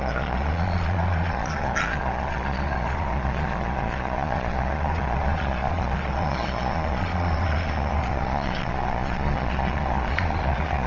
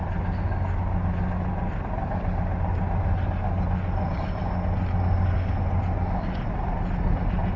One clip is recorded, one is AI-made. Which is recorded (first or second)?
second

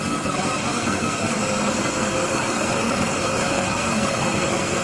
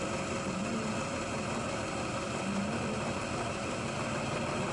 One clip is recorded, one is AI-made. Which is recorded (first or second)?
second